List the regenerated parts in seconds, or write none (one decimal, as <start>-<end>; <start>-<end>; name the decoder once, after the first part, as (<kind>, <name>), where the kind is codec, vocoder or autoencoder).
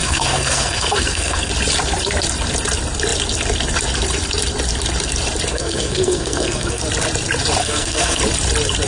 0.0-1.5 (codec, SNAC); 5.5-6.8; 7.6-8.2